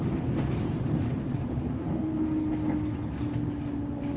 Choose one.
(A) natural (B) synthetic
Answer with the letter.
A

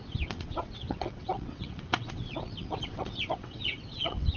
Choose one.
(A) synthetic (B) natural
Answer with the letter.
A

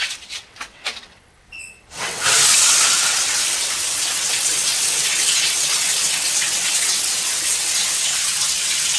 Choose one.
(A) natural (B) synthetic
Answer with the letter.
B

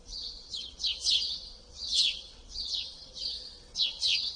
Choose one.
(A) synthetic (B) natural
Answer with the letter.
A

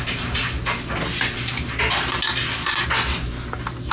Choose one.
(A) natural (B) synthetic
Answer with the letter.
A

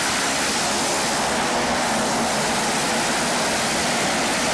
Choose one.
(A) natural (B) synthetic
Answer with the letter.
A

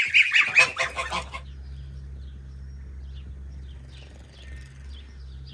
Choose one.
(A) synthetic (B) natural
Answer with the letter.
B